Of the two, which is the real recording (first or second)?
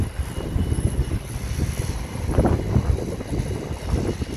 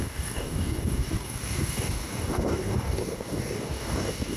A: first